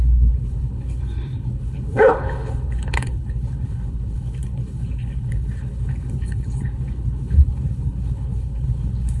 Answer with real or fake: fake